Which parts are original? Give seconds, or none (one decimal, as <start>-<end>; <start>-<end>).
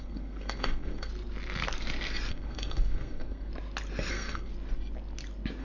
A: 1.1-2.3; 3.5-4.1; 4.5-5.6